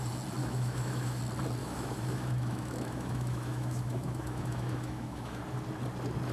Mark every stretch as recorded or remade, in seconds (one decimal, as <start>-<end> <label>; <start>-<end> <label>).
0.0-0.4 recorded; 0.4-1.2 remade; 1.2-1.6 recorded; 1.6-5.4 remade; 5.4-6.3 recorded